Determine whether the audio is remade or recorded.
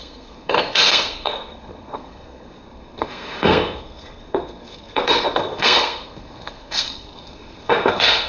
remade